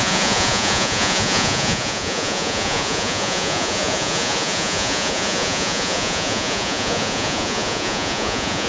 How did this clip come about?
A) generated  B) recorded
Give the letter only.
A